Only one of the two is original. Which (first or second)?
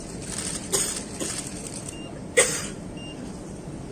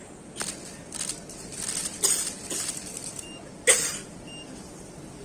second